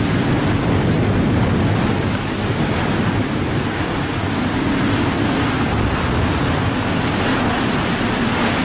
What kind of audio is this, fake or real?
real